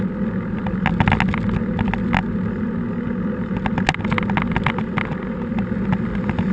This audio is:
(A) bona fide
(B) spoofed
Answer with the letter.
A